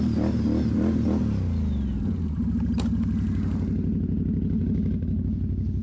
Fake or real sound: real